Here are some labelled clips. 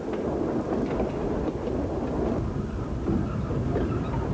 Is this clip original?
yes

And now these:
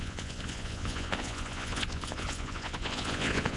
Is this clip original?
no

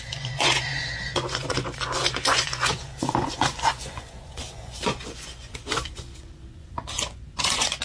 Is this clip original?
no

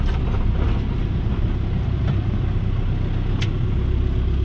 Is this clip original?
yes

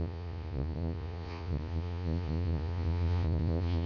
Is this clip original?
no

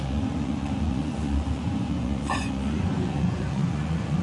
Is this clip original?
no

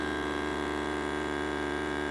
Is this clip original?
no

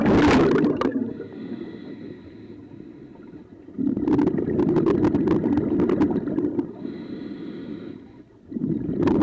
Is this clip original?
yes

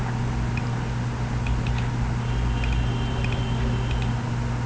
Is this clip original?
yes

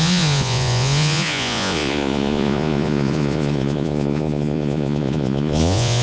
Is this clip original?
no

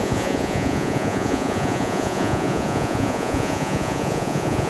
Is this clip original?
no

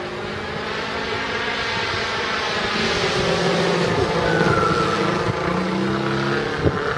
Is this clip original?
yes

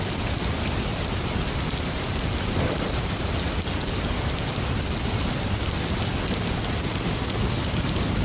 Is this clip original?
yes